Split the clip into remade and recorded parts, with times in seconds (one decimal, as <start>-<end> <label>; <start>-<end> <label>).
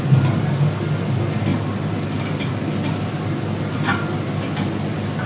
0.0-5.3 recorded